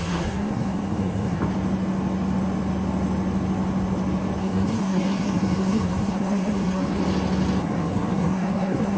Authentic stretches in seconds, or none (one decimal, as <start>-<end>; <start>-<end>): 1.4-4.4; 7.0-7.6